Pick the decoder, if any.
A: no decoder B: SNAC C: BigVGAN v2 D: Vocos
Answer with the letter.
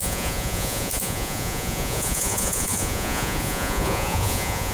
D